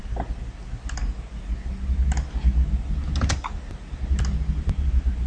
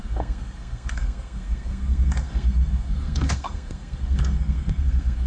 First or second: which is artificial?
second